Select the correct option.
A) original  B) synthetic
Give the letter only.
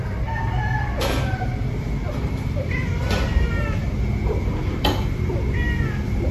A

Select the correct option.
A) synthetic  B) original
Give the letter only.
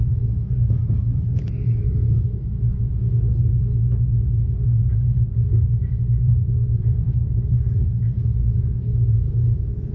A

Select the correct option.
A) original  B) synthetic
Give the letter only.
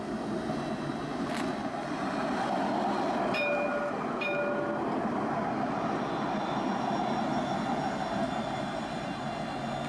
A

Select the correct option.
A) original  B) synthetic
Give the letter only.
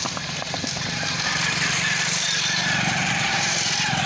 A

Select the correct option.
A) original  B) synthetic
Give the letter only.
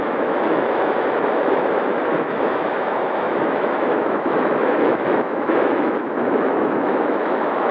B